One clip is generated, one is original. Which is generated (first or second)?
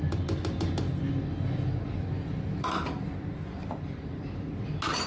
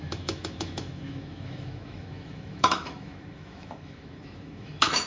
second